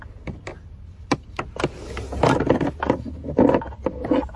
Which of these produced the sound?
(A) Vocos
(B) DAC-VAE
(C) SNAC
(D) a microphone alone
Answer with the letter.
D